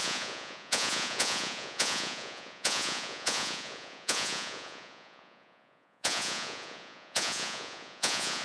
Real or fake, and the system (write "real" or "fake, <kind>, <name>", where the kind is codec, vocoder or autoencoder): fake, vocoder, Vocos